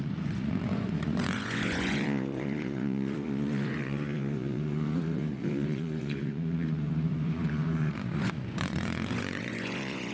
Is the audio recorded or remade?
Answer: remade